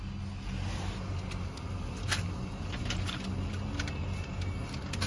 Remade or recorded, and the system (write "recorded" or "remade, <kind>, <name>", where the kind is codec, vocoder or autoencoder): recorded